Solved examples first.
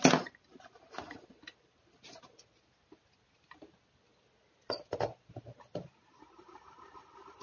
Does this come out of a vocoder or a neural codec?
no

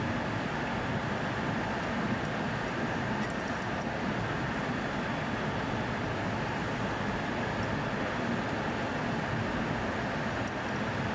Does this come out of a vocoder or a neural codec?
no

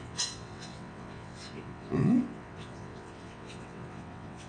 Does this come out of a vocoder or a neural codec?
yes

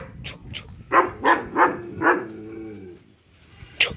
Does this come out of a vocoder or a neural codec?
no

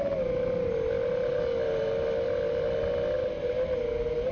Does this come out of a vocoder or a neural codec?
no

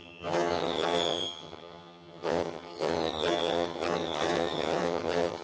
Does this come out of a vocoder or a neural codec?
yes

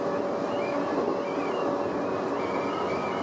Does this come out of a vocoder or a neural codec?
no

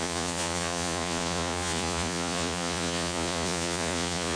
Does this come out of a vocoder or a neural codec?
yes